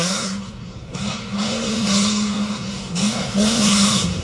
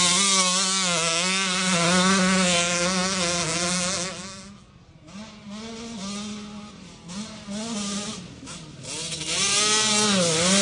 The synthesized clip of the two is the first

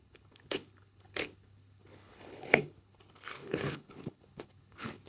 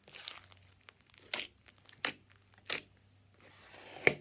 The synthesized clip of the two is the first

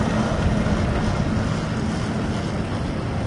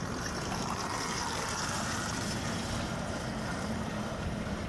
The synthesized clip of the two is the second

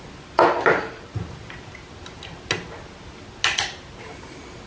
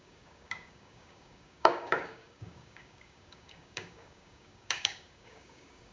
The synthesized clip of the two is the second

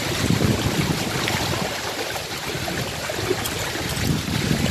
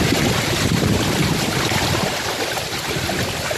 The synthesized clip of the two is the second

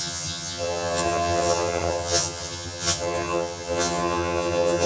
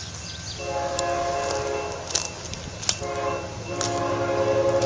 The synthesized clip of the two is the first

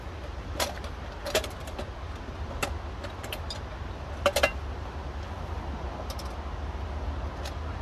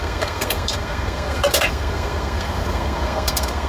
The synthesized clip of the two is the second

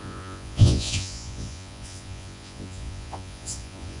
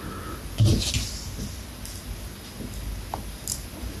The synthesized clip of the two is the first